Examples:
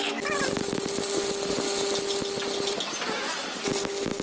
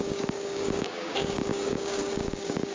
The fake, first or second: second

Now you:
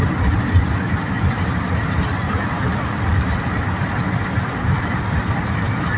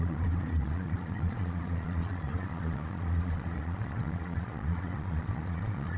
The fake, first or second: second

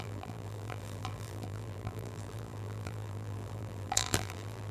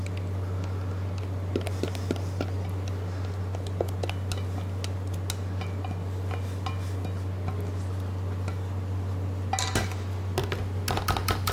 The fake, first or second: first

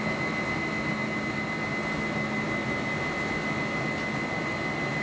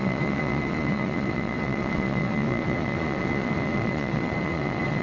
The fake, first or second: second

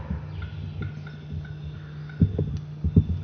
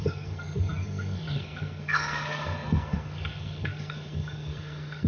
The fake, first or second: second